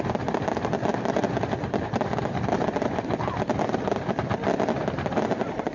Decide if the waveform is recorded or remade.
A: recorded